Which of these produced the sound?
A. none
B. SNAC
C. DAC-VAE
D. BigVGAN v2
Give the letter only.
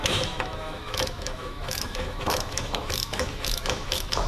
C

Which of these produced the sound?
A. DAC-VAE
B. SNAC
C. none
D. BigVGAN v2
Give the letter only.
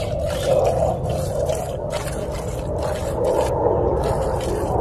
C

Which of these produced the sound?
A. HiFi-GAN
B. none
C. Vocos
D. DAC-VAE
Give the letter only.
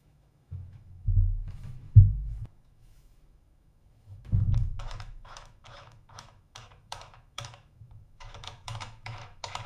D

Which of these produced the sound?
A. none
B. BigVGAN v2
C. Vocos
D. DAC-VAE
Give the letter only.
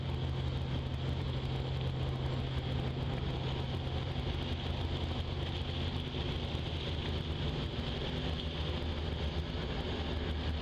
A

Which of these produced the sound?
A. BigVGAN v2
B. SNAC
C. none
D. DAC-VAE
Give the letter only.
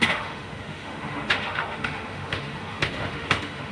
D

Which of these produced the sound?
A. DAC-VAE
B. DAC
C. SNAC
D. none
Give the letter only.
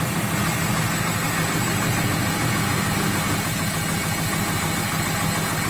D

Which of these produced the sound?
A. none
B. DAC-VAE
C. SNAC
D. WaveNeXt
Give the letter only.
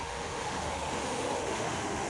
B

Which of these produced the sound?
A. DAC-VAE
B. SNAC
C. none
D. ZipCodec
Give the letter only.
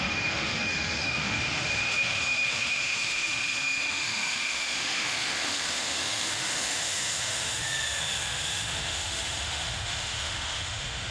A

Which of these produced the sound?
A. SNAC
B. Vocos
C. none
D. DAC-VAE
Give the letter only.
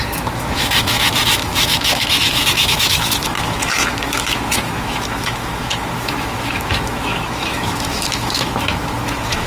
D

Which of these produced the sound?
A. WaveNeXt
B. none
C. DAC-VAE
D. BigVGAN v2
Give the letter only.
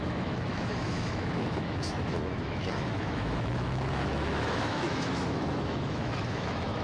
C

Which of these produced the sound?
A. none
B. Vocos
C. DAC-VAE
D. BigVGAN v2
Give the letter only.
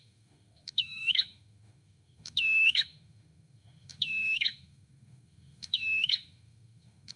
C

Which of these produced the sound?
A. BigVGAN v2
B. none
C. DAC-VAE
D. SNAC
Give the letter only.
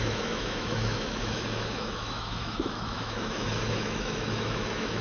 C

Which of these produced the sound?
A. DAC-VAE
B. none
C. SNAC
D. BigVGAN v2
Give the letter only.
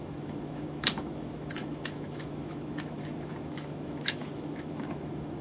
A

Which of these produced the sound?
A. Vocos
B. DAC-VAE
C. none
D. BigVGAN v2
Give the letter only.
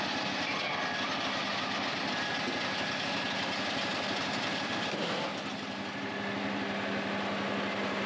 C